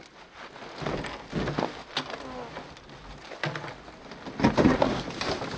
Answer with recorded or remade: recorded